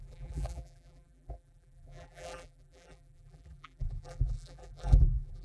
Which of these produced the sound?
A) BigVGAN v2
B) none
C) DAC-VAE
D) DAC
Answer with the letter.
A